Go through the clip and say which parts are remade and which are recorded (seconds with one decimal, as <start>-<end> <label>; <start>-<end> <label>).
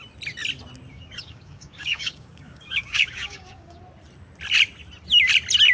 0.0-0.9 recorded; 0.9-3.8 remade; 3.8-5.7 recorded